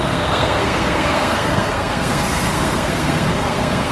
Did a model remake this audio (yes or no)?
yes